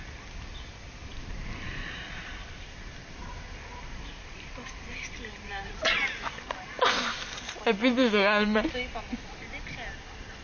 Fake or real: real